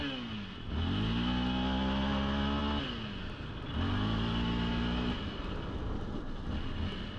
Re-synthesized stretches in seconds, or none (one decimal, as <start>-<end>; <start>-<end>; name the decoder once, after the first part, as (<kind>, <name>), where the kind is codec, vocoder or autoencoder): none